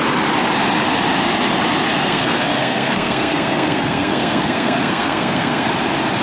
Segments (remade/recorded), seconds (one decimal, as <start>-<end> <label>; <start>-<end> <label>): 0.0-2.0 recorded; 2.0-5.7 remade; 5.7-6.2 recorded